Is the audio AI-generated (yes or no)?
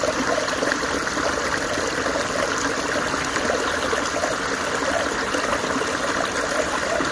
no